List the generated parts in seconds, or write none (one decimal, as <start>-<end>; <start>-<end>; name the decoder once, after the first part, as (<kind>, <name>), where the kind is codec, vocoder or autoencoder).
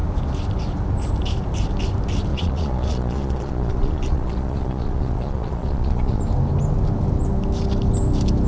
2.3-6.2 (vocoder, Vocos)